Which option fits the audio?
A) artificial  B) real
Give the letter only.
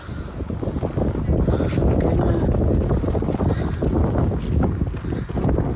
B